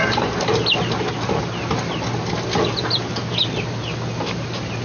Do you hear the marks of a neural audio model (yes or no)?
no